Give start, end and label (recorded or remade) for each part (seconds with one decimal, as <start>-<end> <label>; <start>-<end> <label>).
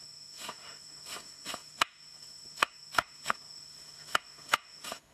0.0-5.1 remade